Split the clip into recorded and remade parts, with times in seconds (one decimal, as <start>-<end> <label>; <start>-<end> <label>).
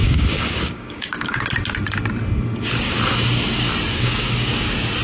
0.0-1.5 remade; 1.5-3.9 recorded; 3.9-4.5 remade; 4.5-5.0 recorded